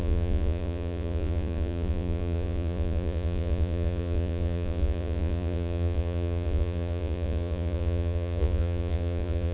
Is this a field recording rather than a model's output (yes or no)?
no